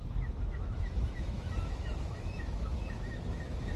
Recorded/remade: remade